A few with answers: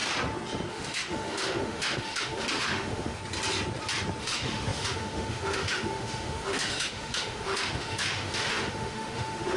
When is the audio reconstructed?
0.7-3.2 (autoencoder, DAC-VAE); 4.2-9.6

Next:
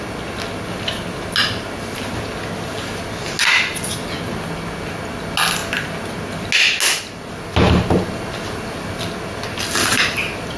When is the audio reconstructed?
none